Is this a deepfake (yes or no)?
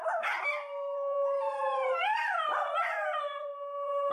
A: yes